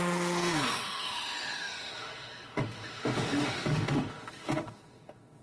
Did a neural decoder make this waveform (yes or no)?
yes